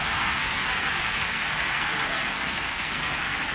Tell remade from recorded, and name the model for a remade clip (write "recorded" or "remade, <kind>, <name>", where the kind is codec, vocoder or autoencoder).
remade, codec, SNAC